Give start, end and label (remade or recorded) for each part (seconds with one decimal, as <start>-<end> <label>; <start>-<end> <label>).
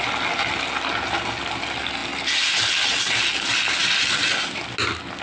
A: 0.0-3.8 recorded; 3.8-4.6 remade; 4.6-5.2 recorded